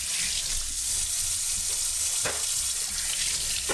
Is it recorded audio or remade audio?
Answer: recorded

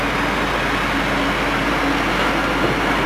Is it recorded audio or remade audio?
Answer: recorded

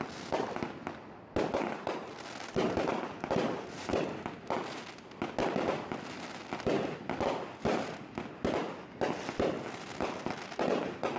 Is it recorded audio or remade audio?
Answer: recorded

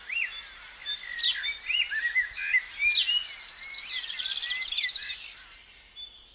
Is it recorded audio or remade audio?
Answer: recorded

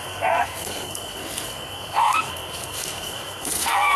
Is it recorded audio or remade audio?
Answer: remade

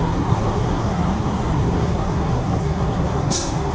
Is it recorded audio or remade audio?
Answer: remade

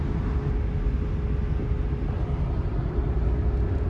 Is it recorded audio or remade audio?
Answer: recorded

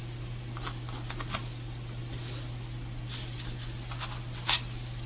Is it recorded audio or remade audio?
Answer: recorded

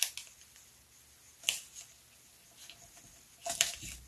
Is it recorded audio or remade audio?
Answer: recorded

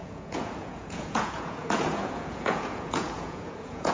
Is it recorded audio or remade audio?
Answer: remade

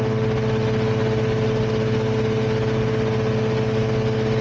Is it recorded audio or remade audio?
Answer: recorded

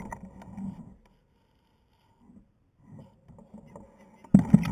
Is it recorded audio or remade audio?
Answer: recorded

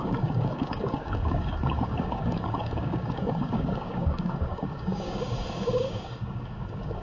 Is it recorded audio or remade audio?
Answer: remade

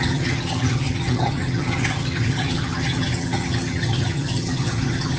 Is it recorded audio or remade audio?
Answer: remade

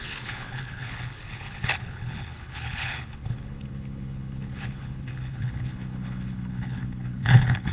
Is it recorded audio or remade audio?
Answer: remade